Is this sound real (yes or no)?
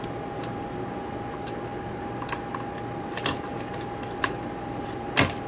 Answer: yes